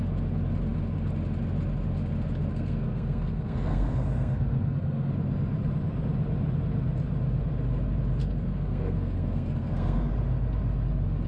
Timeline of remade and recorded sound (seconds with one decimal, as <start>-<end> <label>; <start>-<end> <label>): 0.0-2.5 recorded; 2.5-5.1 remade; 5.1-8.2 recorded; 8.2-10.1 remade; 10.1-11.3 recorded